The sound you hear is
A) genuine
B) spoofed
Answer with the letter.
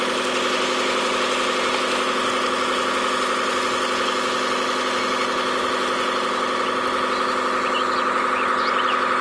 A